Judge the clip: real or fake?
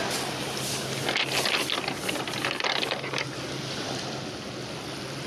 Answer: real